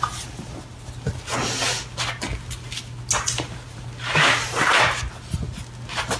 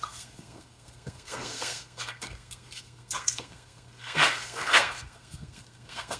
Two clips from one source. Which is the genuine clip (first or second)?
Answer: first